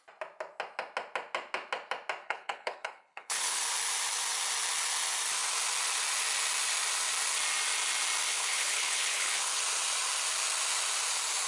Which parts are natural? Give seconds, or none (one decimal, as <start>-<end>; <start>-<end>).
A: 0.0-2.2; 3.6-8.3; 9.6-11.5